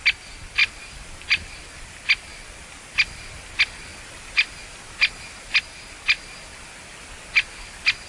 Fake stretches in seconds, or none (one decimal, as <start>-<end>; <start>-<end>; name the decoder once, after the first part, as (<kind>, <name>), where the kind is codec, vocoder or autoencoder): 0.6-2.0 (vocoder, BigVGAN v2); 3.9-4.6; 6.5-7.1